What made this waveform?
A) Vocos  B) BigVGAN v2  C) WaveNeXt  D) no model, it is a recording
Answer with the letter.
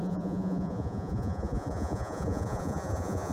A